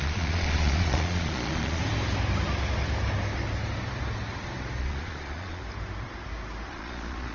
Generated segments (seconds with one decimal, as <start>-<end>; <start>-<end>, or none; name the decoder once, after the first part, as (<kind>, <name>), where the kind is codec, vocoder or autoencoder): 0.0-1.8 (vocoder, Vocos); 4.8-5.6; 6.7-7.3